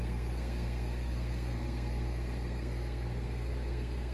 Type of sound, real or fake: fake